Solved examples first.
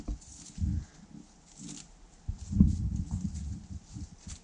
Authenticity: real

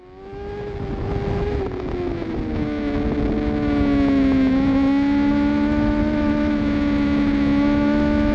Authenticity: real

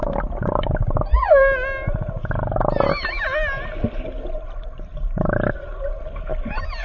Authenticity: real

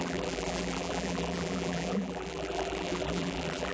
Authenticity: fake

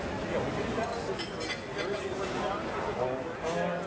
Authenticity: real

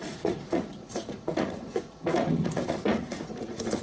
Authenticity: fake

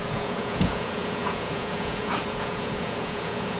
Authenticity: fake